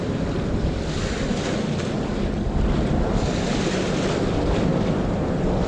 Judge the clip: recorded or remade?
recorded